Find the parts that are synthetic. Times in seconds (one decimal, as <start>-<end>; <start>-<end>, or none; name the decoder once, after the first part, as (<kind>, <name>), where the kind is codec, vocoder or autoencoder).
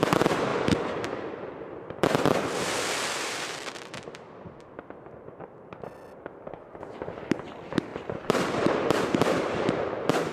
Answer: 0.5-4.7 (vocoder, BigVGAN v2); 7.9-9.9